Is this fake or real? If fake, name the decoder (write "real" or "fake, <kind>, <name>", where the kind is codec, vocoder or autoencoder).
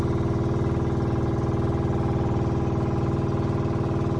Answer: real